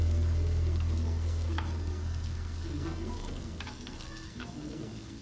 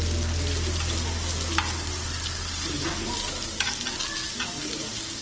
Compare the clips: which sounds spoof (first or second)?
first